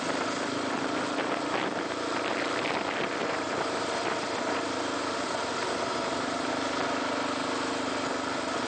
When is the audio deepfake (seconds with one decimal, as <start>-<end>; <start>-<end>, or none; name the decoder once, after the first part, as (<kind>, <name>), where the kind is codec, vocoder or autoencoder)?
3.2-6.5 (vocoder, BigVGAN v2)